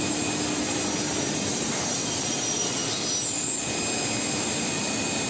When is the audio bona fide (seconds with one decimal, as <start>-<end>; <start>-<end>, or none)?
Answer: 0.0-5.3